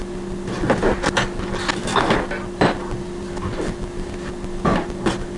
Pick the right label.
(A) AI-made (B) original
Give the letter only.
B